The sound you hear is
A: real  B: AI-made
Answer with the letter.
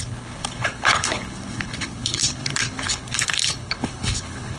B